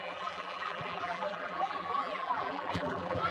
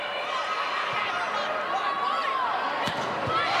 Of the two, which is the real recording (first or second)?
second